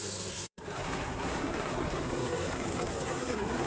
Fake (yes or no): yes